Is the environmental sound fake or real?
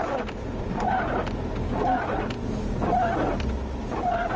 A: real